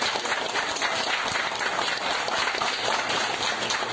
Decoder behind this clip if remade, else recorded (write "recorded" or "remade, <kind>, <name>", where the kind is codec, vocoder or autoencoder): recorded